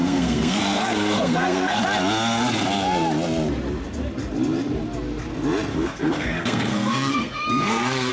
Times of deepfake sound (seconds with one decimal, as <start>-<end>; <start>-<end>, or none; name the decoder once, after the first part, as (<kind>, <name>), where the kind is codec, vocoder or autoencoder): 0.0-1.8 (codec, SNAC); 5.7-8.1